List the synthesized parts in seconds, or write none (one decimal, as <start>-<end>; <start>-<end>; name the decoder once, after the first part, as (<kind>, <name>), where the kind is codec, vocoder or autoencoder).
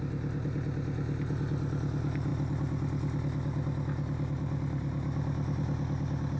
none